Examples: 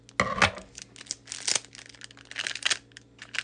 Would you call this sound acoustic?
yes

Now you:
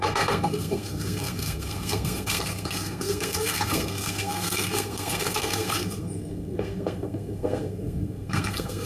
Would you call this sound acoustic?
no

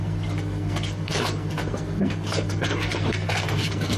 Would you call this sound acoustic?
no